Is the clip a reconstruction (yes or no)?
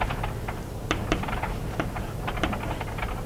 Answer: yes